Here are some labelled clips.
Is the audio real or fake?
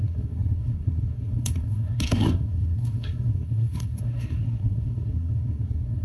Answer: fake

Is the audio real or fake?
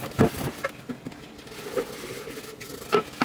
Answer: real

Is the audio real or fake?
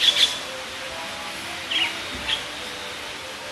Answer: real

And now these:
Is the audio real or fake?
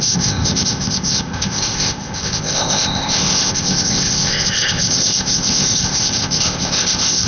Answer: fake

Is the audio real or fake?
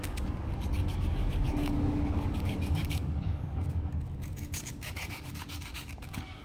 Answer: fake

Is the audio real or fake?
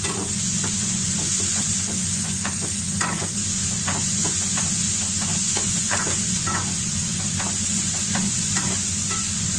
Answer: fake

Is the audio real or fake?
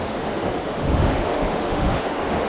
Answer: fake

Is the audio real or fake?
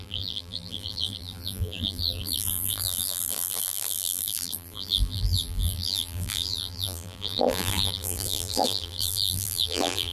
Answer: fake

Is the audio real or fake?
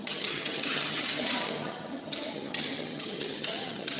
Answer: fake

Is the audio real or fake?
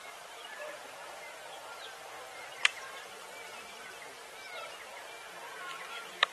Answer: fake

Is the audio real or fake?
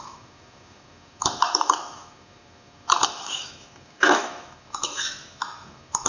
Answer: fake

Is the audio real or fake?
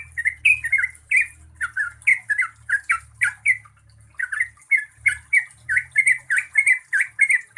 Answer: real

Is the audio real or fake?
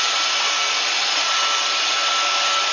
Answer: real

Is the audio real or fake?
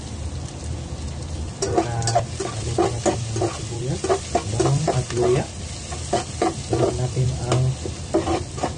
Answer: real